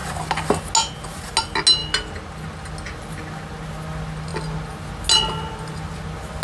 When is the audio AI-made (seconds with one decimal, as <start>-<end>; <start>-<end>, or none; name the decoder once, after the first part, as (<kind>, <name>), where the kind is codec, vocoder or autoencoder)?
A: none